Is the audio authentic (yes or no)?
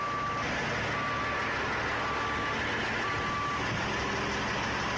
yes